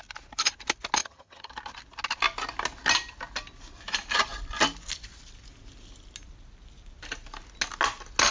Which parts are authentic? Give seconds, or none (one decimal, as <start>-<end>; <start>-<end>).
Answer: 0.0-1.0; 1.5-8.3